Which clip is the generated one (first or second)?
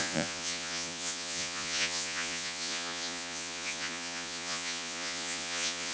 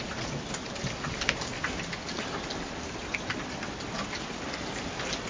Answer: first